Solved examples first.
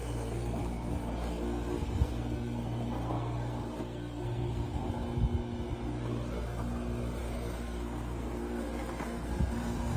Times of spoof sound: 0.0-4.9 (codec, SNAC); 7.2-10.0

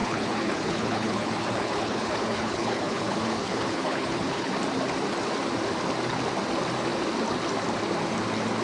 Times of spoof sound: 0.0-4.5 (codec, HILCodec)

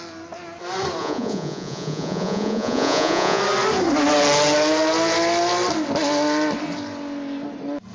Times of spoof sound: 1.0-3.4 (vocoder, Vocos)

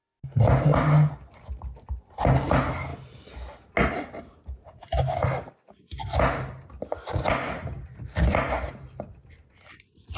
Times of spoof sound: none